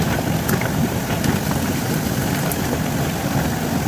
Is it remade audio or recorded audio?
recorded